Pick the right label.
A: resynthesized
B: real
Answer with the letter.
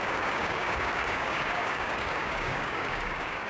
A